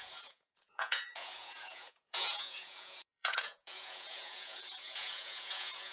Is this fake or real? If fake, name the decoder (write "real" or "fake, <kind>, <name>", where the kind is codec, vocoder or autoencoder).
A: fake, vocoder, Vocos